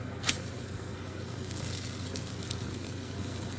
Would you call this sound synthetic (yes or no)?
yes